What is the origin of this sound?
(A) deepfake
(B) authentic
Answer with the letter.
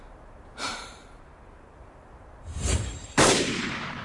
A